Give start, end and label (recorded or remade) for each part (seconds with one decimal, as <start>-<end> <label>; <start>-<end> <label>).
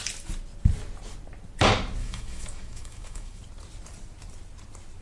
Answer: 0.0-2.0 recorded; 2.0-3.4 remade; 3.4-5.0 recorded